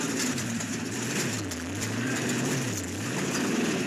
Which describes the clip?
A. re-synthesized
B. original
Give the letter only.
A